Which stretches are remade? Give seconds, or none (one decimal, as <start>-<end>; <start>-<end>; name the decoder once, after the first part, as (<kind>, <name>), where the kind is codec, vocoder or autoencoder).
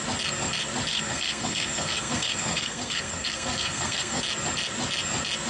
0.9-4.2 (codec, SNAC)